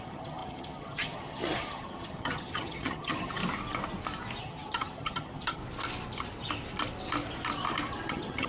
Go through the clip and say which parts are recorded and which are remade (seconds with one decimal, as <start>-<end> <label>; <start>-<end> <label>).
0.0-3.4 remade; 3.4-4.4 recorded; 4.4-5.6 remade; 5.6-8.1 recorded; 8.1-8.5 remade